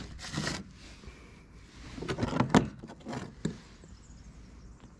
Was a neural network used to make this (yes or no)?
no